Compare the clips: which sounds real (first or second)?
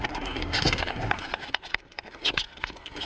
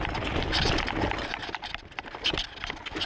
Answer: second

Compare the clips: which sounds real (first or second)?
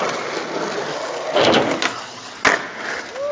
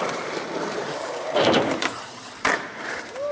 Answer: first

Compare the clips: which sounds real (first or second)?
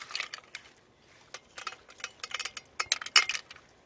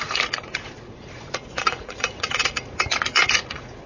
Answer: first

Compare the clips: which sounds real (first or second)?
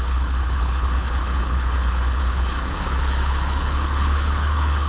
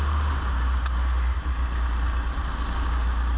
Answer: second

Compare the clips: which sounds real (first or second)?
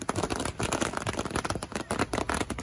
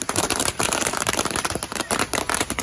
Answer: first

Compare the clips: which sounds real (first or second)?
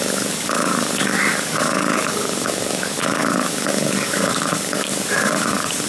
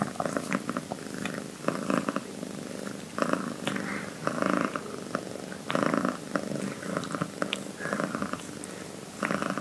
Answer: second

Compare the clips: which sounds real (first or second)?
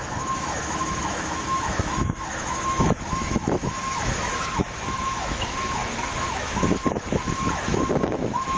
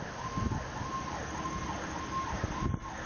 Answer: second